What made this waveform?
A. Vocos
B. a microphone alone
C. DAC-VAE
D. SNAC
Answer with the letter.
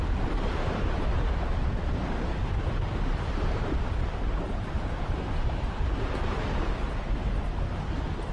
B